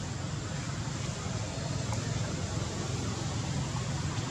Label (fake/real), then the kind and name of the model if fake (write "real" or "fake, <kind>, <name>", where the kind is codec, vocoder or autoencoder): real